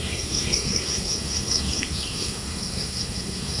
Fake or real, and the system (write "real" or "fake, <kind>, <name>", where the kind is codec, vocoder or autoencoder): fake, codec, SNAC